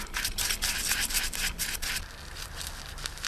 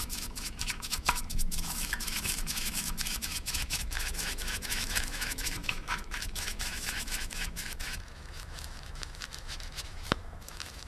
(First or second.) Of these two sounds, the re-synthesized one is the second